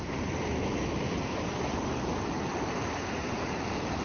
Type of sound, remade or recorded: remade